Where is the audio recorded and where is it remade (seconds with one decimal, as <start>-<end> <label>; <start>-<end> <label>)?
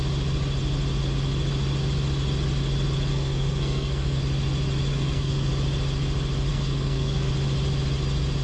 0.0-3.1 recorded; 3.1-4.2 remade; 4.2-4.9 recorded; 4.9-5.5 remade; 5.5-6.5 recorded; 6.5-7.3 remade; 7.3-8.4 recorded